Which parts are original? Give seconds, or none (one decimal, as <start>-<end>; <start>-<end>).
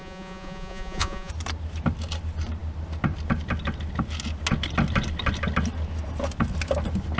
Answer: 1.3-7.2